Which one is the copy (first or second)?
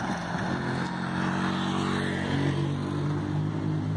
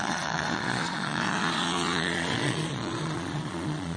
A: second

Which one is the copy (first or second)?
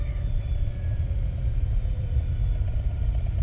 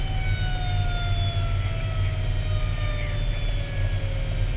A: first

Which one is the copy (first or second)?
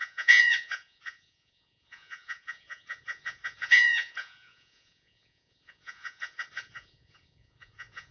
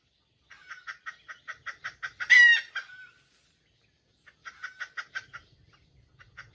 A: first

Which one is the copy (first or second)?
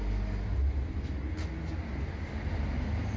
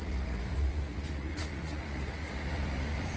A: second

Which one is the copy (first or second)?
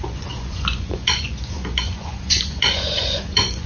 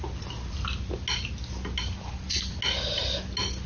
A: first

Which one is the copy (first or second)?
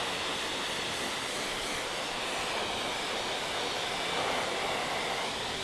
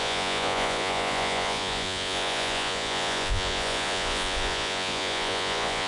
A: second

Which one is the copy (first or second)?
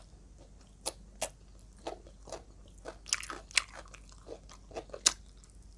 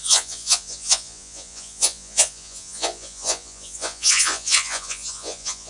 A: second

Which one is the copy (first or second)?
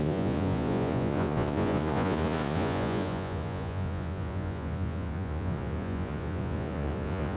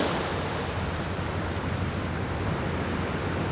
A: first